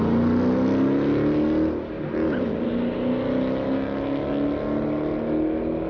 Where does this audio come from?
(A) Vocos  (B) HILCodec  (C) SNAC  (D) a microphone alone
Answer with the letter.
D